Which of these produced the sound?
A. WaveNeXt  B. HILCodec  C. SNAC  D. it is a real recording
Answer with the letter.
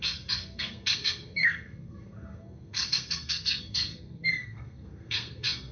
C